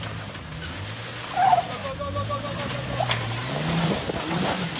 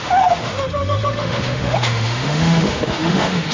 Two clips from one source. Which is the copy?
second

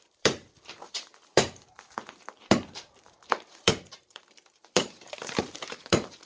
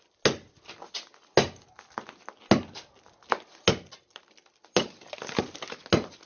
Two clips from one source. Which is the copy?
first